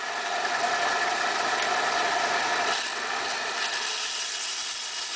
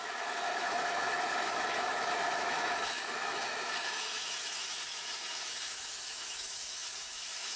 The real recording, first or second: first